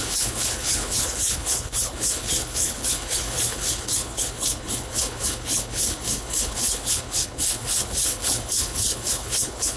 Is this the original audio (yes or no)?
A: no